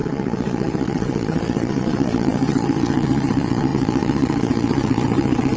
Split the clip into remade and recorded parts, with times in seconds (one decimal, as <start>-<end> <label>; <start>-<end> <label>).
0.0-5.6 remade